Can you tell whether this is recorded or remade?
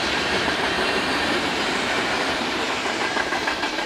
remade